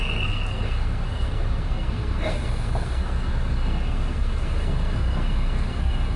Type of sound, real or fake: fake